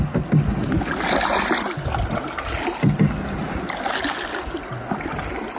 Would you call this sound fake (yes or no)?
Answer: no